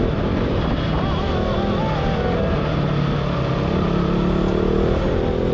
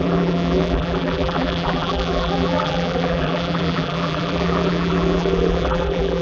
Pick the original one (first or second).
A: first